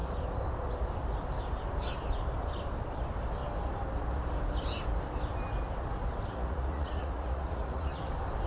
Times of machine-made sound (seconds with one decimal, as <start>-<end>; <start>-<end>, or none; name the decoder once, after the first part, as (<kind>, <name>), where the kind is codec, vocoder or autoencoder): 6.3-8.0 (vocoder, Vocos)